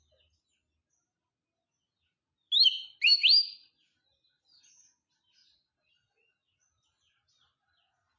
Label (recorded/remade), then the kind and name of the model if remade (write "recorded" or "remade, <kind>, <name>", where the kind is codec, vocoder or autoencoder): recorded